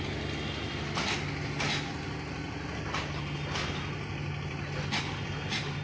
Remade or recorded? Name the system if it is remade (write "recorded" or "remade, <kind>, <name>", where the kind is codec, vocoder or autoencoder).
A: recorded